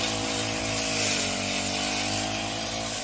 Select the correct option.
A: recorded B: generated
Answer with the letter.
A